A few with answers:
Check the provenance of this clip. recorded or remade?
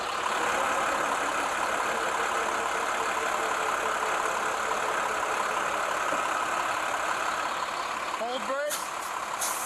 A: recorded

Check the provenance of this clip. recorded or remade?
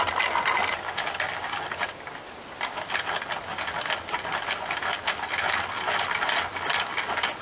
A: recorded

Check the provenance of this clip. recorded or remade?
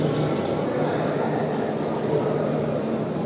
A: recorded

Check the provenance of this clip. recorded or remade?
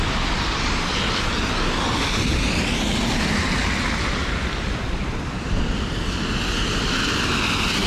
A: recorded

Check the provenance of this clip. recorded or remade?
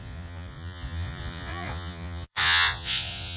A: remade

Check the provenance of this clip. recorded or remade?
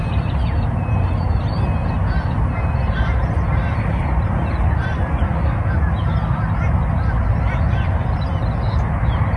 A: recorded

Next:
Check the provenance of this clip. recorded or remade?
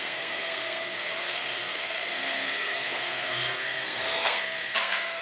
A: remade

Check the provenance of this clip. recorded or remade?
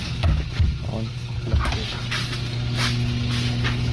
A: recorded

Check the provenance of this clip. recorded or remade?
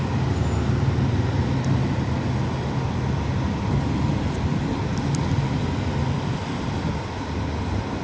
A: recorded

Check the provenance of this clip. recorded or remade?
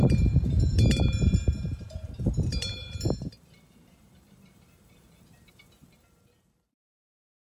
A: remade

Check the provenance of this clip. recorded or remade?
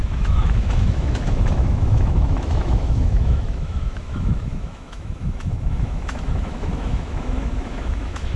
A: remade